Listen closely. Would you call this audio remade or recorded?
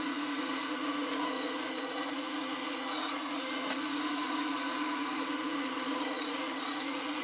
remade